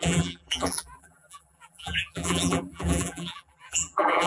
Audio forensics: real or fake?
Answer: fake